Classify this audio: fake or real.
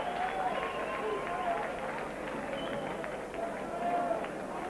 real